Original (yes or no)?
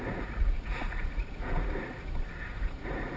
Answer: no